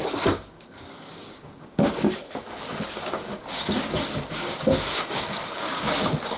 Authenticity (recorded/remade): remade